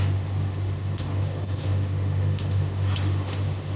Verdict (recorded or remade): remade